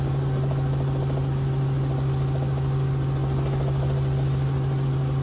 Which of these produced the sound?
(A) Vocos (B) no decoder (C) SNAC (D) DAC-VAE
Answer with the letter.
B